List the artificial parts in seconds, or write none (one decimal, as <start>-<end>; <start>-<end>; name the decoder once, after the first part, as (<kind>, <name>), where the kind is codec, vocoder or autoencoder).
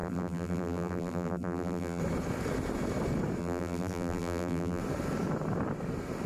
0.0-2.0 (vocoder, BigVGAN v2); 3.4-4.8